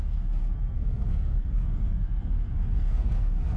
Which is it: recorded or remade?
remade